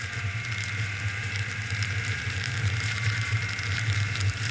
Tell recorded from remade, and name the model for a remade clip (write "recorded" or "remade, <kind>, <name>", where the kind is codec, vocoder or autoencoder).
remade, vocoder, BigVGAN v2